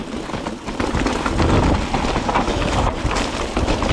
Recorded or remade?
recorded